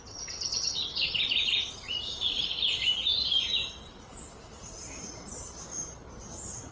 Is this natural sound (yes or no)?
yes